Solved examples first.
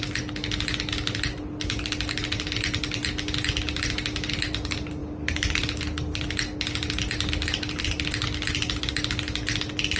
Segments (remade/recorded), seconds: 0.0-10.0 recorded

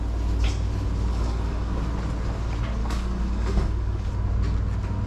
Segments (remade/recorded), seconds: 0.0-1.1 recorded; 1.1-1.8 remade; 1.8-2.8 recorded; 2.8-4.1 remade; 4.1-5.1 recorded

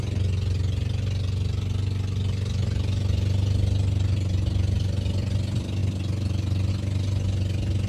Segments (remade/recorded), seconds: 0.0-7.9 recorded

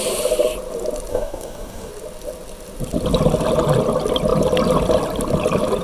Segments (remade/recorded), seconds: 0.0-1.1 recorded; 1.1-1.9 remade; 1.9-5.8 recorded

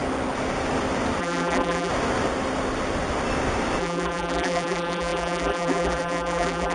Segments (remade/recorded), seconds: 0.0-1.2 recorded; 1.2-1.9 remade; 1.9-3.8 recorded; 3.8-6.7 remade

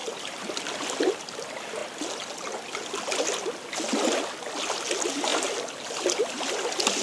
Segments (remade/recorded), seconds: 0.0-7.0 recorded